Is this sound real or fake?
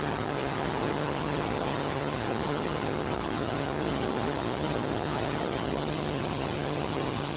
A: fake